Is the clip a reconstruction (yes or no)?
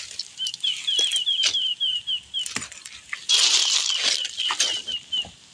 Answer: no